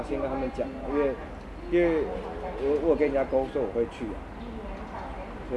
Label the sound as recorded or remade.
recorded